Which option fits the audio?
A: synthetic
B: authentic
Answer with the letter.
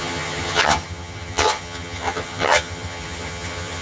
A